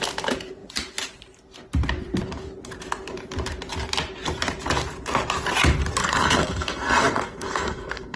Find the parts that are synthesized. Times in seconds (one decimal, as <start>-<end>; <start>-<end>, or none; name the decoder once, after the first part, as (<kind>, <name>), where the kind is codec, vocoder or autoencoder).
6.0-8.2 (codec, SNAC)